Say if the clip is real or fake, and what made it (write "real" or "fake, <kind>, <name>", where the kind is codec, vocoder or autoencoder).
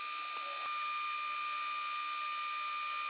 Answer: real